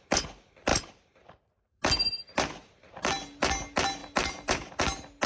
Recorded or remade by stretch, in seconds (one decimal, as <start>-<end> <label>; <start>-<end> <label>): 0.0-0.7 recorded; 0.7-1.8 remade; 1.8-2.6 recorded; 2.6-3.1 remade; 3.1-4.0 recorded; 4.0-4.7 remade; 4.7-5.3 recorded